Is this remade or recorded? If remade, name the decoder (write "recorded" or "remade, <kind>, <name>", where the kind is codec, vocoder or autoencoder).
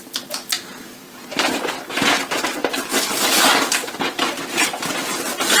remade, vocoder, BigVGAN v2